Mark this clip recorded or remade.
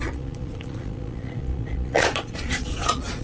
remade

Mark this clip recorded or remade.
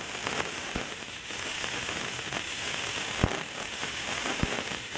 remade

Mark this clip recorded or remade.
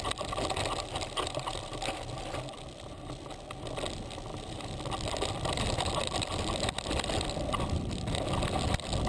recorded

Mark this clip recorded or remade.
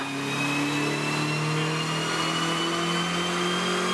recorded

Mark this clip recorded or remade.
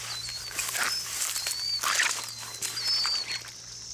recorded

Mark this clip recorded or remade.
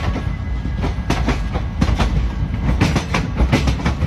recorded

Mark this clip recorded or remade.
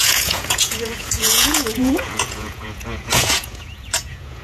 remade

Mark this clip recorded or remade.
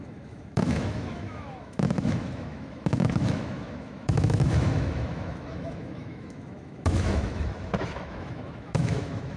remade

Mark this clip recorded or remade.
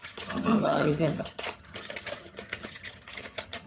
remade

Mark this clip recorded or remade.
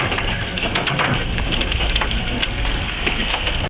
remade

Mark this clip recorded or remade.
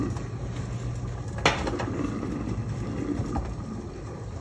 recorded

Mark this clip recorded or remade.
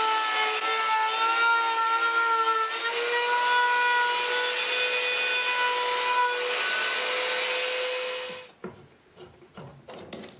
recorded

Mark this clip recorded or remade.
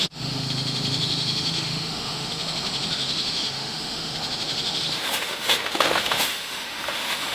remade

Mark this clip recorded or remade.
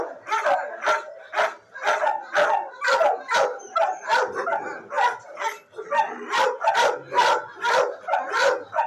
recorded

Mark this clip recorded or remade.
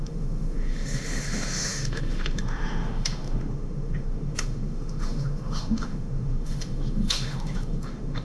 remade